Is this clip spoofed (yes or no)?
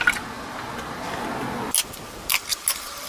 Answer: no